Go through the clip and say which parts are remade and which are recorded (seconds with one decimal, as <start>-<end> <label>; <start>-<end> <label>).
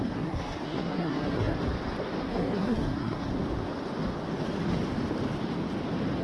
0.0-1.6 remade; 1.6-2.2 recorded; 2.2-3.3 remade; 3.3-6.2 recorded